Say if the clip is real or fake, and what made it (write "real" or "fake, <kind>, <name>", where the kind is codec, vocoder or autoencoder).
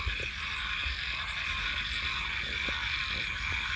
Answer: real